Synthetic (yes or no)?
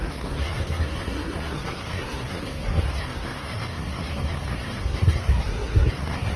yes